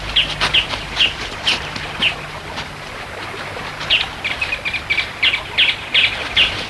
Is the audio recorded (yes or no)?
yes